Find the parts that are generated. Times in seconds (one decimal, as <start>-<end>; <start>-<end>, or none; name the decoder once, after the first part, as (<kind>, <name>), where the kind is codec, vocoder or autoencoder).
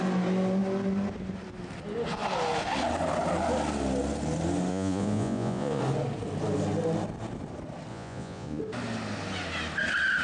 4.7-5.8 (vocoder, Vocos); 7.9-8.6